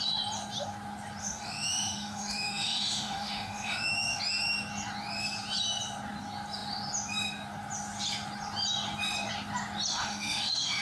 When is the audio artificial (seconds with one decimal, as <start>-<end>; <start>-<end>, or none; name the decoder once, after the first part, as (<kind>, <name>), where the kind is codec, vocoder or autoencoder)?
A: 1.2-4.2 (autoencoder, DAC-VAE); 9.9-10.8